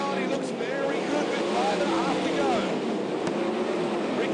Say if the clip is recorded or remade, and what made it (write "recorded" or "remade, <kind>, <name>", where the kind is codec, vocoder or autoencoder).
recorded